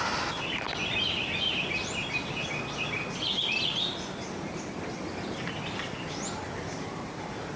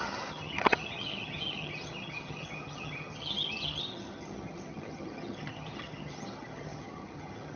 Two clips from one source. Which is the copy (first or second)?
second